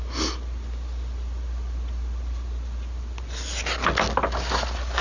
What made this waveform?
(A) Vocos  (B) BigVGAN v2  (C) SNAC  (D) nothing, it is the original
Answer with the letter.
D